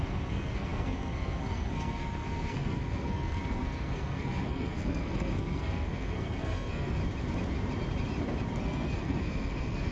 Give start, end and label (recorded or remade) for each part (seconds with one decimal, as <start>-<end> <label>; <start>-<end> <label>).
0.0-7.0 remade; 7.0-8.6 recorded; 8.6-9.9 remade